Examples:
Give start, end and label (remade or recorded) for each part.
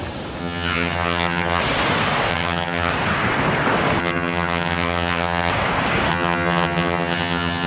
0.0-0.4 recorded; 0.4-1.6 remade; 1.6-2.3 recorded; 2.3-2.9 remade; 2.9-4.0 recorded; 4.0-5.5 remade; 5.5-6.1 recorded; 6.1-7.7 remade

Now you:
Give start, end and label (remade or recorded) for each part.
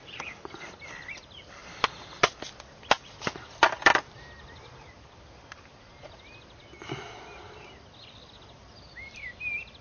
0.0-9.8 recorded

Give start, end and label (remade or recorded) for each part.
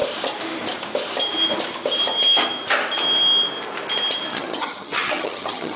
0.0-4.3 recorded; 4.3-5.8 remade